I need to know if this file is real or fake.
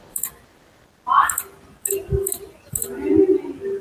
real